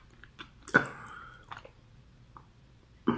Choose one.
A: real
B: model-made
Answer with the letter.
A